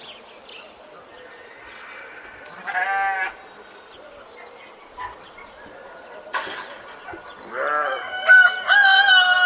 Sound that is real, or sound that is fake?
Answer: real